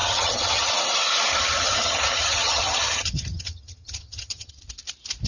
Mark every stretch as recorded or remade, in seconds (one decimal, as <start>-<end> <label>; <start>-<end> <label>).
0.0-0.7 remade; 0.7-1.3 recorded; 1.3-4.5 remade; 4.5-5.3 recorded